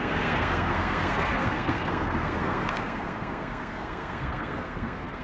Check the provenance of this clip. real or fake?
fake